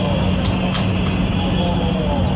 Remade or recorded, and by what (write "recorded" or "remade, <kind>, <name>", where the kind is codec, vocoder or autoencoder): recorded